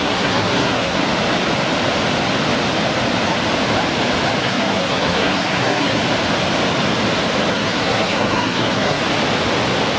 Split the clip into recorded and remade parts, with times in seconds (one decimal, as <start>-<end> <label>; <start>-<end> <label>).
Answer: 0.0-1.0 remade; 1.0-4.4 recorded; 4.4-6.0 remade; 6.0-7.5 recorded; 7.5-9.0 remade; 9.0-10.0 recorded